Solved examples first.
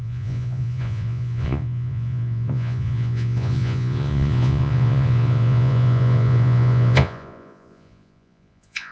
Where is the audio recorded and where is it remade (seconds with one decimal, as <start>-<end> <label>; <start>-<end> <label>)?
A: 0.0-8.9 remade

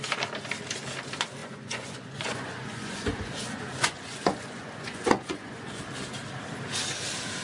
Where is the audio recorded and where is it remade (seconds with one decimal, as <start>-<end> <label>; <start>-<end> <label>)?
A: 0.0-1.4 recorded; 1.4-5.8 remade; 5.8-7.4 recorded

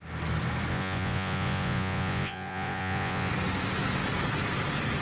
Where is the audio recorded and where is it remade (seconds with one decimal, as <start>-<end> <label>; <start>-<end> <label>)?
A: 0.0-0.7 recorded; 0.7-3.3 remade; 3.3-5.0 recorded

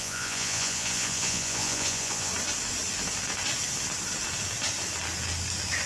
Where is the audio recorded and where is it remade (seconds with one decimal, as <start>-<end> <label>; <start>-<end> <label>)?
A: 0.0-2.3 remade; 2.3-5.9 recorded